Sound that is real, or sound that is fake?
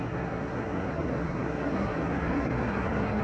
fake